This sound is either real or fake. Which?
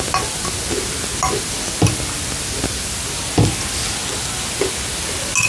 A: real